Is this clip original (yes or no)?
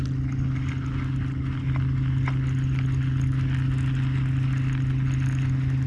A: yes